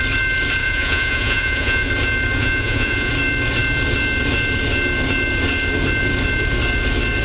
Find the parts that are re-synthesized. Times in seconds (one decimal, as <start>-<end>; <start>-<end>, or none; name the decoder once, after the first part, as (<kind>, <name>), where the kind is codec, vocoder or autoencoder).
0.6-1.9 (vocoder, Vocos); 2.4-3.1